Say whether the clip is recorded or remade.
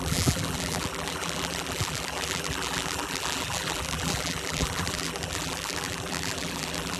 remade